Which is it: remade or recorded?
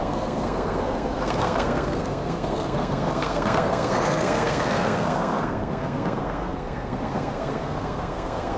remade